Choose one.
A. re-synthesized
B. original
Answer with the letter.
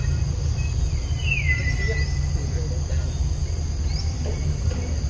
B